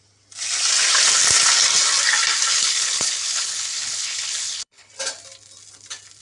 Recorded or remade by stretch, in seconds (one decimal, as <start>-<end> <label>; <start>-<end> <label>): 0.0-2.5 recorded; 2.5-4.9 remade; 4.9-6.2 recorded